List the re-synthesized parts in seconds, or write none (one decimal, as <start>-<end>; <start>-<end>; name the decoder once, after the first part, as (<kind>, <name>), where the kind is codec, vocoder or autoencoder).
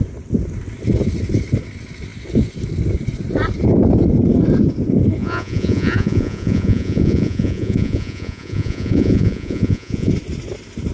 5.2-10.1 (vocoder, Vocos)